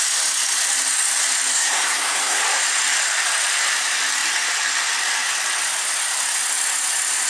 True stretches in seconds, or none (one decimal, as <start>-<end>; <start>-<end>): 0.0-1.5; 2.4-7.3

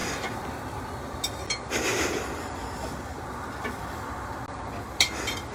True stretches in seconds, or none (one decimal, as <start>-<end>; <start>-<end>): 0.0-5.5

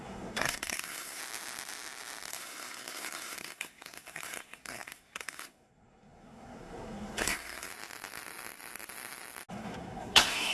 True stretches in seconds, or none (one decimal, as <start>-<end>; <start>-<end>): 1.2-2.3; 7.7-9.5

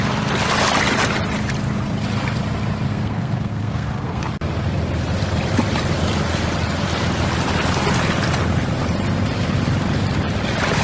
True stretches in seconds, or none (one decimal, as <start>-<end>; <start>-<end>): 0.0-2.9; 4.3-10.8

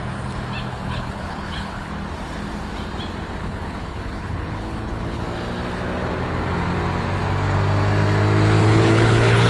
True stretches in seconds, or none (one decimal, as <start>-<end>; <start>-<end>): 0.0-0.7; 1.9-3.4; 5.2-8.6